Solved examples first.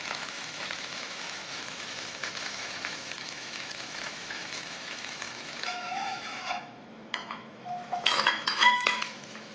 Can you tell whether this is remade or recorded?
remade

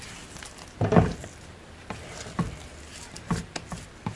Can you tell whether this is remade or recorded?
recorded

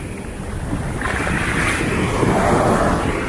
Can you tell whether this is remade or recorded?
recorded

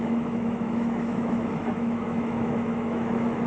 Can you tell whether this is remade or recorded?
remade